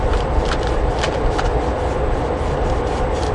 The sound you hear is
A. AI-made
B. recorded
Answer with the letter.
B